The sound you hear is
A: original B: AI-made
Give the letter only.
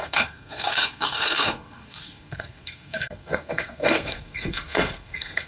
B